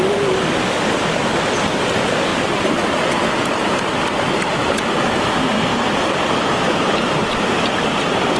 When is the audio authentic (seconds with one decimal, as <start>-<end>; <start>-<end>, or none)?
0.0-8.4